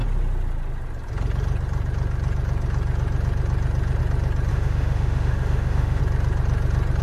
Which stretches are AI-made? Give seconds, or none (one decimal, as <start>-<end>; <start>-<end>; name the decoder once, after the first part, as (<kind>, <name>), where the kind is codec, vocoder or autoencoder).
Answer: 4.5-6.0 (autoencoder, DAC-VAE)

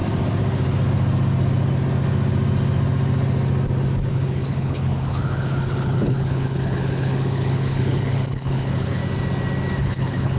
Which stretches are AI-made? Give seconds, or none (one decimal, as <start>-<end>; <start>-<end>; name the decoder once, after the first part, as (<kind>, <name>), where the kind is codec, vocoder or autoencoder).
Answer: 4.1-9.0 (codec, HILCodec); 9.8-10.4

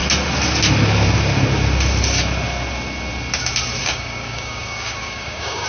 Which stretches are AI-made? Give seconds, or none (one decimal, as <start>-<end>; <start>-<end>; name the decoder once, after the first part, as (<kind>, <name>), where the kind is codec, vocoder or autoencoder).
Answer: 3.8-5.7 (codec, DAC)

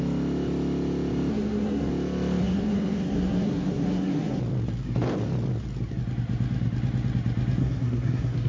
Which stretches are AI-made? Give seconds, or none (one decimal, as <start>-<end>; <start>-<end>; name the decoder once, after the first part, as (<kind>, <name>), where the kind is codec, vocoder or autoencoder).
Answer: 1.3-1.9 (codec, SNAC); 2.4-4.4; 7.6-8.5

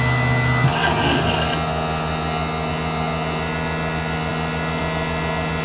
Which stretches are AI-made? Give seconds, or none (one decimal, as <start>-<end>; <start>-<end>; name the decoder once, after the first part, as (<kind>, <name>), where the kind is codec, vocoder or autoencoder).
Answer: none